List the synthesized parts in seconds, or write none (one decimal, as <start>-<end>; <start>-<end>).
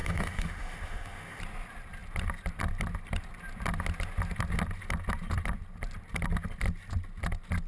0.0-1.4